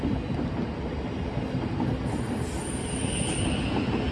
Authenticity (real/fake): real